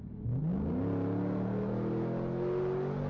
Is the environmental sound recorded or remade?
recorded